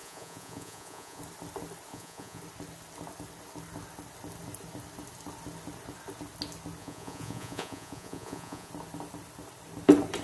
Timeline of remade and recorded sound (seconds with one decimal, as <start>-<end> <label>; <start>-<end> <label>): 0.0-1.2 remade; 1.2-1.9 recorded; 1.9-2.4 remade; 2.4-6.8 recorded; 6.8-8.7 remade; 8.7-10.2 recorded